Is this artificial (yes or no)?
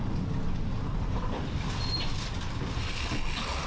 no